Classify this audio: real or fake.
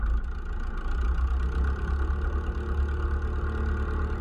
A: real